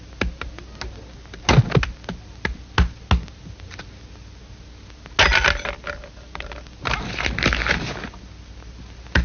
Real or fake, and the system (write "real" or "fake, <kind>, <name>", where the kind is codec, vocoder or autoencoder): real